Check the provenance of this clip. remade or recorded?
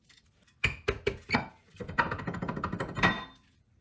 recorded